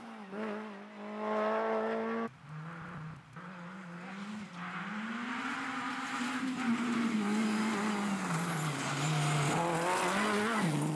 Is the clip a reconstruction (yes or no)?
no